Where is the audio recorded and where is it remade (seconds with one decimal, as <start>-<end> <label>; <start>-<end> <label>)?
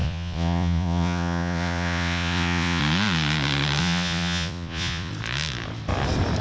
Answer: 0.0-2.8 remade; 2.8-3.8 recorded; 3.8-5.1 remade; 5.1-6.4 recorded